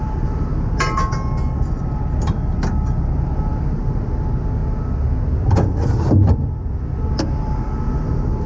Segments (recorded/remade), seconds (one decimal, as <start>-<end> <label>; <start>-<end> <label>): 0.0-8.5 recorded